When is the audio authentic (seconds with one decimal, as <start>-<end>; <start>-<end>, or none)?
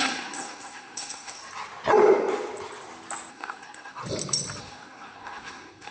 1.4-3.3; 4.0-4.6